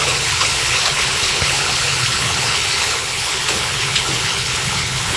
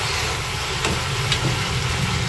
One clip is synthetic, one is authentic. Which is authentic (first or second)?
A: second